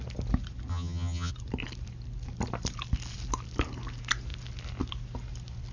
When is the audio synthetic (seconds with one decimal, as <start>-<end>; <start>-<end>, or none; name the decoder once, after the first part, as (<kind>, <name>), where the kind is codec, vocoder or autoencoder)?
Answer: 0.7-1.3 (vocoder, HiFi-GAN)